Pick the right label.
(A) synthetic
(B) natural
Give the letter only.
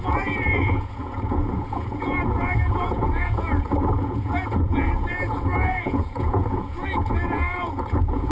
A